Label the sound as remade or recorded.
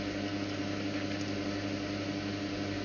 recorded